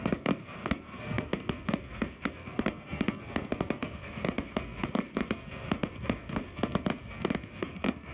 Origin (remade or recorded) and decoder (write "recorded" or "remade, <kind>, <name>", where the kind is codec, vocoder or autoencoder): remade, codec, SNAC